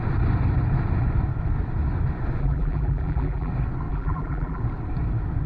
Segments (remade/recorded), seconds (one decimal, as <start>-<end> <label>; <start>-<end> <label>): 0.0-2.4 recorded; 2.4-3.5 remade; 3.5-3.9 recorded; 3.9-4.6 remade; 4.6-5.5 recorded